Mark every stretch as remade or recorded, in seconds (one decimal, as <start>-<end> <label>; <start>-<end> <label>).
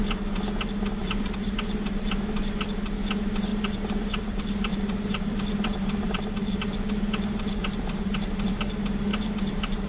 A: 0.0-1.0 recorded; 1.0-2.4 remade; 2.4-3.5 recorded; 3.5-8.5 remade; 8.5-9.1 recorded; 9.1-9.9 remade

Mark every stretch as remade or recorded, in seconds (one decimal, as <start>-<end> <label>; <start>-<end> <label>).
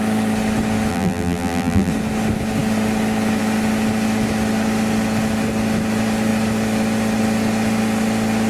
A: 0.0-0.9 recorded; 0.9-1.9 remade; 1.9-8.5 recorded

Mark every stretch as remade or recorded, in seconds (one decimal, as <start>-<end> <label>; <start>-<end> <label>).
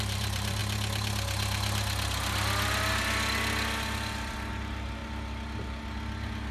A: 0.0-0.6 remade; 0.6-4.5 recorded; 4.5-5.0 remade; 5.0-6.5 recorded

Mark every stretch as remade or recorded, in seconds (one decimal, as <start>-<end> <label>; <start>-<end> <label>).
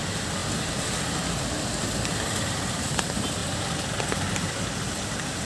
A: 0.0-5.4 recorded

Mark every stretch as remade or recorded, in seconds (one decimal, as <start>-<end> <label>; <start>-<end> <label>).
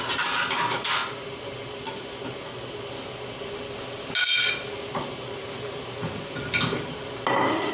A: 0.0-7.7 recorded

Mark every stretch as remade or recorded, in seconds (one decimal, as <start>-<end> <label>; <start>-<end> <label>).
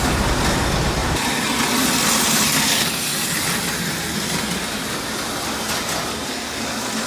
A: 0.0-7.1 recorded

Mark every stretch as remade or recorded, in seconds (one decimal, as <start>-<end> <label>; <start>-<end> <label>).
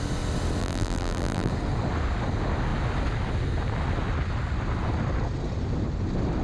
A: 0.0-0.6 recorded; 0.6-1.5 remade; 1.5-6.4 recorded